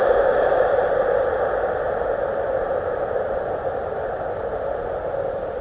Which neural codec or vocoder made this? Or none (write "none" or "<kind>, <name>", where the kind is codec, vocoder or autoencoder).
none